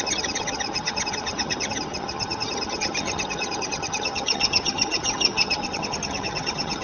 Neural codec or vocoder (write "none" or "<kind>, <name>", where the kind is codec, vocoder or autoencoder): vocoder, HiFi-GAN